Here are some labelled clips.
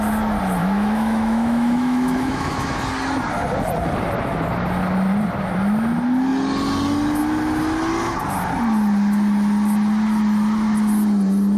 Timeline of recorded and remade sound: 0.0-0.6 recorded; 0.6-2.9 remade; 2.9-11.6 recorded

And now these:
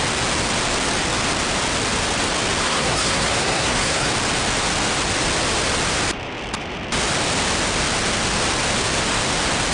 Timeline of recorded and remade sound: 0.0-2.6 recorded; 2.6-4.1 remade; 4.1-9.7 recorded

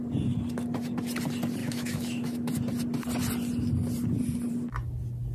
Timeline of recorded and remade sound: 0.0-1.6 recorded; 1.6-2.5 remade; 2.5-5.3 recorded

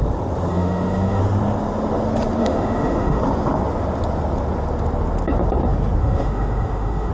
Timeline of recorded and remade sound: 0.0-0.5 recorded; 0.5-1.2 remade; 1.2-2.4 recorded; 2.4-3.2 remade; 3.2-6.0 recorded; 6.0-7.1 remade